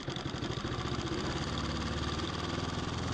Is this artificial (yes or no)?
no